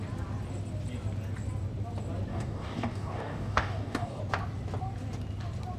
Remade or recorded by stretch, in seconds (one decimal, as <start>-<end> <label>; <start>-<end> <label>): 0.0-2.3 recorded; 2.3-4.2 remade; 4.2-5.8 recorded